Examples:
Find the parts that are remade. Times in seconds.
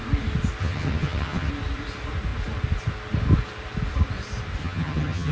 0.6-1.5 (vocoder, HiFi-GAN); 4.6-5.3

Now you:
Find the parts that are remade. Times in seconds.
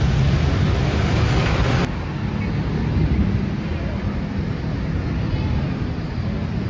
none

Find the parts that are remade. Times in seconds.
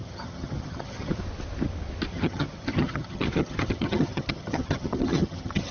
0.0-1.2 (vocoder, HiFi-GAN); 2.1-5.7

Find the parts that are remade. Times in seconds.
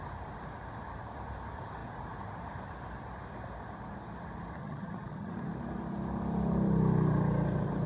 4.6-5.3 (vocoder, HiFi-GAN)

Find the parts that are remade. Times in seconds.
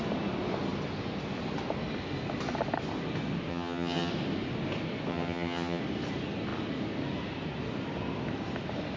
3.5-4.1 (vocoder, HiFi-GAN); 5.1-5.8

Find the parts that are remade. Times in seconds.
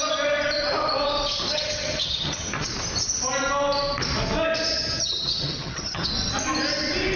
1.5-2.7 (vocoder, HiFi-GAN); 4.7-6.1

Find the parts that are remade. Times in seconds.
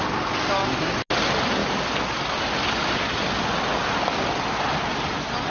none